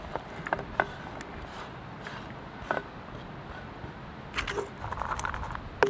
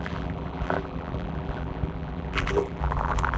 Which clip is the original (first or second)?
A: first